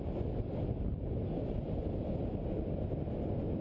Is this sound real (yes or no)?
yes